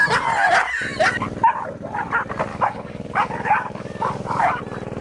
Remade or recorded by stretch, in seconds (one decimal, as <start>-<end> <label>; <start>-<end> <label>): 0.0-2.5 recorded; 2.5-4.6 remade; 4.6-5.0 recorded